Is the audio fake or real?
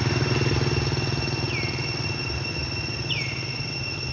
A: real